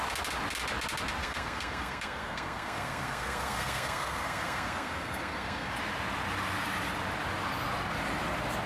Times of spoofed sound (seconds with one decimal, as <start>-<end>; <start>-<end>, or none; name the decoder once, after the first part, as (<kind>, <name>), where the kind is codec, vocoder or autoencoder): 1.2-5.7 (codec, SNAC)